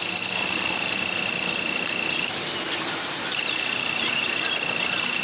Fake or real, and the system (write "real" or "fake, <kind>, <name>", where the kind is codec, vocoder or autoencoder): fake, vocoder, BigVGAN v2